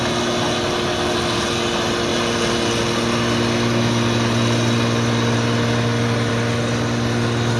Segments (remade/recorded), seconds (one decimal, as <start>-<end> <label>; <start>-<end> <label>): 0.0-7.6 recorded